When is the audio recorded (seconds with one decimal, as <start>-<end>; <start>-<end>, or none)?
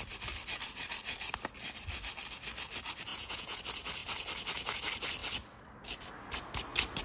0.0-3.1; 3.6-7.0